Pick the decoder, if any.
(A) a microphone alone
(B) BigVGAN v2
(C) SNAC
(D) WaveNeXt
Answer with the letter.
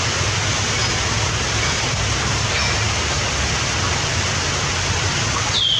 A